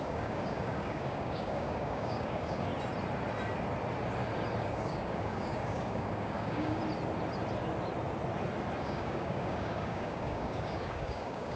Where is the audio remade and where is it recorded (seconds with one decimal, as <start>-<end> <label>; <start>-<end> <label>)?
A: 0.0-2.7 remade; 2.7-4.6 recorded; 4.6-6.8 remade; 6.8-8.8 recorded; 8.8-11.6 remade